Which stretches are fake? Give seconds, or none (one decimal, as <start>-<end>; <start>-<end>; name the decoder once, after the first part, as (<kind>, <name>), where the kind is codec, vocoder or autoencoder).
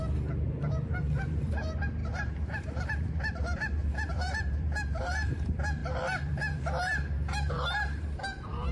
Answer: 0.0-8.7 (vocoder, BigVGAN v2)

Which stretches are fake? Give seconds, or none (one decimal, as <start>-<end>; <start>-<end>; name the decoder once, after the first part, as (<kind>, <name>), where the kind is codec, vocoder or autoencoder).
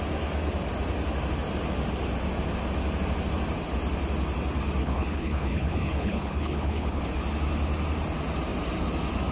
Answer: 4.8-7.0 (codec, HILCodec)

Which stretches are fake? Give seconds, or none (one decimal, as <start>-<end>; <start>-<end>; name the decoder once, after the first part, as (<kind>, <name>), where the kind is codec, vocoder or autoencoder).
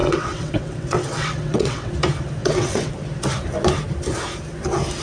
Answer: 0.0-1.9 (vocoder, WaveNeXt); 2.4-2.9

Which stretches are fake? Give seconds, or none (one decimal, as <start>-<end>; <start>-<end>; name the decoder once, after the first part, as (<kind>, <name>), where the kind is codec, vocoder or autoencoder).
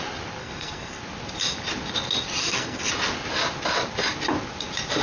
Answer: 0.4-1.0 (codec, SNAC); 2.4-2.9